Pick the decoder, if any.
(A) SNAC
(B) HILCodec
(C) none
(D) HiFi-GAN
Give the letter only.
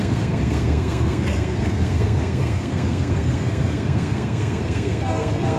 A